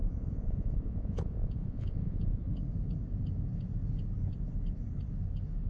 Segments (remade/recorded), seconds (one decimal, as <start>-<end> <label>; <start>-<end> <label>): 0.0-2.4 remade; 2.4-5.7 recorded